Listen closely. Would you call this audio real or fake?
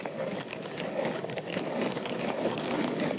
fake